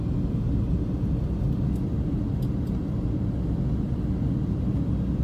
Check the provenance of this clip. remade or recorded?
recorded